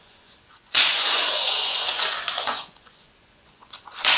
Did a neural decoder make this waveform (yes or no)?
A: yes